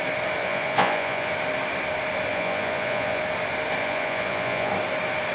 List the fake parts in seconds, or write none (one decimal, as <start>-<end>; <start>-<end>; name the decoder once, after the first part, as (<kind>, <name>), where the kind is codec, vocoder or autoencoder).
0.4-1.3 (vocoder, Vocos); 2.3-3.2; 3.8-4.7